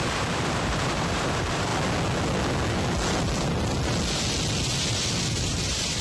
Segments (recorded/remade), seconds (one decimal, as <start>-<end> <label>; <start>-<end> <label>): 0.0-1.7 remade; 1.7-5.3 recorded; 5.3-6.0 remade